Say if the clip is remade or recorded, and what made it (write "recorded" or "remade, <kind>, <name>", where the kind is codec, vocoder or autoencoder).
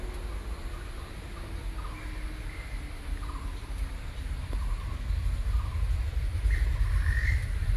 recorded